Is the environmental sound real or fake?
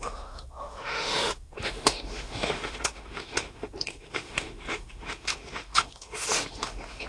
fake